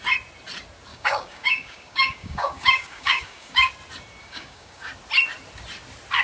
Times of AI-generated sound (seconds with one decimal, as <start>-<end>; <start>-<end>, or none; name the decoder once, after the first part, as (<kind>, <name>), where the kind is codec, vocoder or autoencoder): 0.9-3.7 (codec, DAC); 4.2-4.9